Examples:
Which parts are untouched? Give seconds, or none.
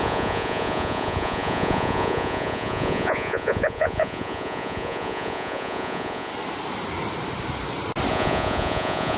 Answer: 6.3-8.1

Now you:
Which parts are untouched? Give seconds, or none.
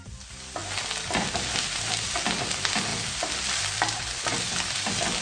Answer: 0.0-5.2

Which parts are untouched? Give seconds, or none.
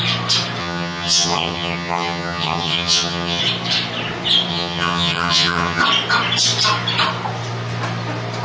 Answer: 0.0-0.6; 3.4-4.5; 5.8-8.4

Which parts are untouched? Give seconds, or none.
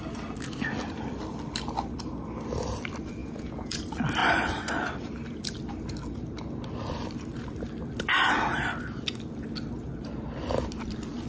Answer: 0.0-3.2; 3.8-11.3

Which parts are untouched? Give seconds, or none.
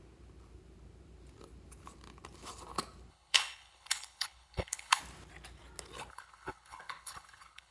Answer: 0.0-3.1; 5.0-6.1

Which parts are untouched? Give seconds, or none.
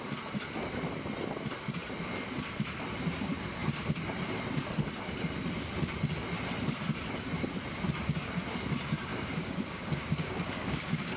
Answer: 0.0-9.1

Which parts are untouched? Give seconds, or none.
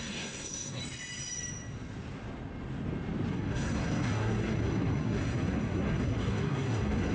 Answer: 0.8-3.3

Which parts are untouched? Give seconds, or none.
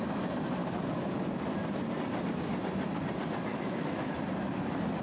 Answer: 0.0-3.5; 4.1-5.0